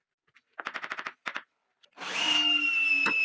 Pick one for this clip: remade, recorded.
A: recorded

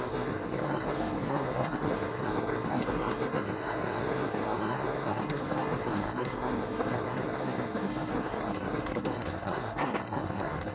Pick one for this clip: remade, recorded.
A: remade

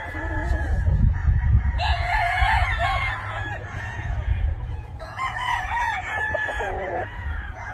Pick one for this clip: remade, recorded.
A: remade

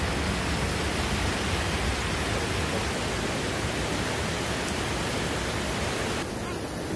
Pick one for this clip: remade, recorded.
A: recorded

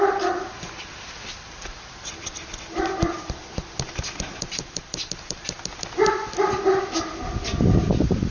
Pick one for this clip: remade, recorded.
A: remade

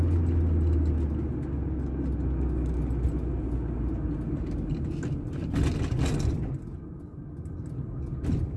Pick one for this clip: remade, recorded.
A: recorded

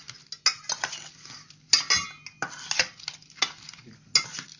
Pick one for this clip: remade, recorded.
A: recorded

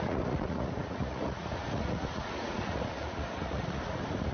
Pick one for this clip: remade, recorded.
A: remade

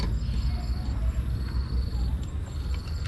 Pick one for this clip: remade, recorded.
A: recorded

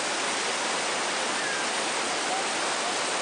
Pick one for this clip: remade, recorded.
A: recorded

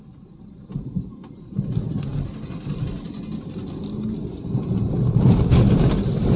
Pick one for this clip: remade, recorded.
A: recorded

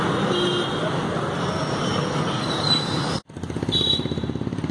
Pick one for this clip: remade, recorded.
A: recorded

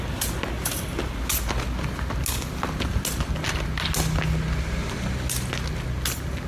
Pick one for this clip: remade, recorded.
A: recorded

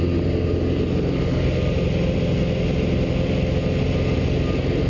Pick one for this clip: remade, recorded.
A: recorded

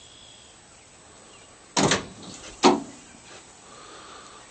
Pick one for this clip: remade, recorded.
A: recorded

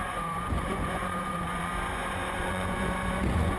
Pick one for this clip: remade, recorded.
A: remade